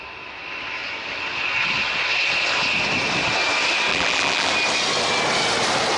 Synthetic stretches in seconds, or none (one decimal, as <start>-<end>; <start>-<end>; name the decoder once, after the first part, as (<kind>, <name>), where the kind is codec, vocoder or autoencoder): 3.9-4.5 (vocoder, BigVGAN v2)